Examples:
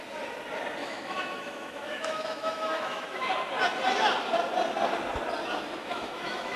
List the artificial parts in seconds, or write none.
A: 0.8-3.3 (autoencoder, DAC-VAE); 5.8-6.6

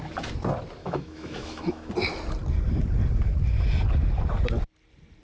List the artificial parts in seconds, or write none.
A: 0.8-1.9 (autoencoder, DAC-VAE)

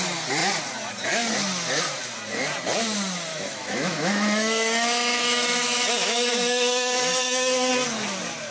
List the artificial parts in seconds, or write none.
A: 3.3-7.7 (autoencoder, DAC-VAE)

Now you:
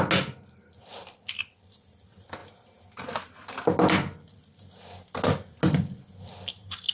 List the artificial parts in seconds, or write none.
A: none

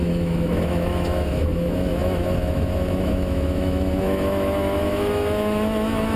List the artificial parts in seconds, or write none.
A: 0.0-6.2 (autoencoder, DAC-VAE)

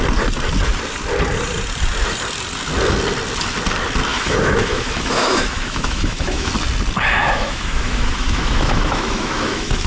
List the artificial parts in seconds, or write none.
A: 4.1-6.5 (autoencoder, DAC-VAE); 7.2-9.9

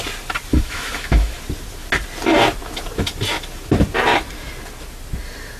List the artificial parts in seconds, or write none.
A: 0.5-1.4 (autoencoder, DAC-VAE)

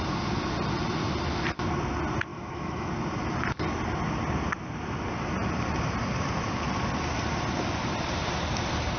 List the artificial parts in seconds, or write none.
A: 2.3-2.9 (autoencoder, DAC-VAE)